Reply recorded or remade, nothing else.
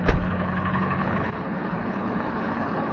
remade